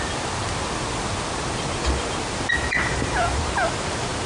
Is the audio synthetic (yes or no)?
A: no